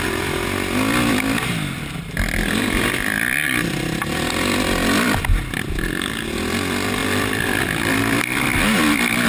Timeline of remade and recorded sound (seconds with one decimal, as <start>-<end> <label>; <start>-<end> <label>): 0.0-9.3 recorded